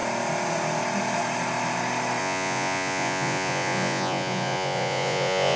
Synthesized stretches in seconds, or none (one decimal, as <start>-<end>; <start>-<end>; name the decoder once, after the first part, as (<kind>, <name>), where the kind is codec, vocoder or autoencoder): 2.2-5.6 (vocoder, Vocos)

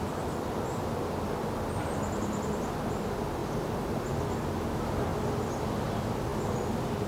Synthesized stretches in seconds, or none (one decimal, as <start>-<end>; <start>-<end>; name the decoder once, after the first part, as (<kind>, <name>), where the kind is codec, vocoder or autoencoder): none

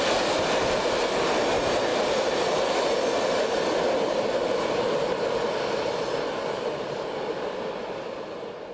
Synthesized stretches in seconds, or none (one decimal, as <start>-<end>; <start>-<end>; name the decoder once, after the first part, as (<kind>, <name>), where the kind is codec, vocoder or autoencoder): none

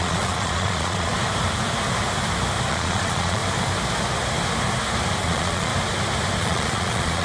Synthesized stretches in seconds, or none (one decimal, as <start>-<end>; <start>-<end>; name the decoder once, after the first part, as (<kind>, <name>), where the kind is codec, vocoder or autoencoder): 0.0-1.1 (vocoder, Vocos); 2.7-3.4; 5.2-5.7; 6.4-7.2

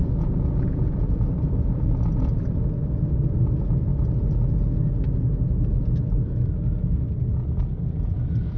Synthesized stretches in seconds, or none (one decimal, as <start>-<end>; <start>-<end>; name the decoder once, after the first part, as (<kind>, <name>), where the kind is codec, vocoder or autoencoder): 0.0-1.3 (vocoder, Vocos)

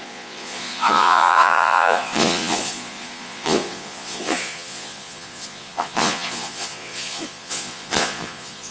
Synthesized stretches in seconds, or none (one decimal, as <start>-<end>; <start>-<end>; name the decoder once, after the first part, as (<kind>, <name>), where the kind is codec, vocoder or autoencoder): 0.0-8.7 (vocoder, Vocos)

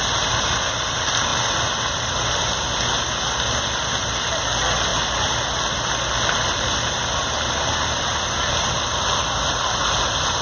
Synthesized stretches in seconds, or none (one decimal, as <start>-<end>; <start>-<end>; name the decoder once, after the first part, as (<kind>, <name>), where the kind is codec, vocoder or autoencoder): none

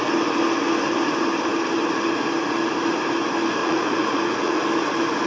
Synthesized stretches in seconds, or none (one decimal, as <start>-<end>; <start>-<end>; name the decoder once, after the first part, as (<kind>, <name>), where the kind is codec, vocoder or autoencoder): 3.6-4.6 (vocoder, Vocos)